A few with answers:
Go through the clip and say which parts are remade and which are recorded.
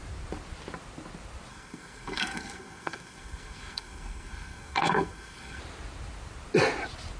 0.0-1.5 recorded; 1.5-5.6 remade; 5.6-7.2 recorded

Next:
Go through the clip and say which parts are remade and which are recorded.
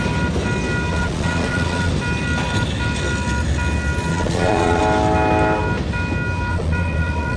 0.0-0.9 recorded; 0.9-1.9 remade; 1.9-4.1 recorded; 4.1-4.8 remade; 4.8-6.5 recorded; 6.5-7.4 remade